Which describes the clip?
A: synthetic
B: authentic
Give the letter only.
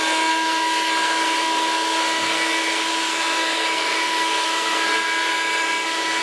A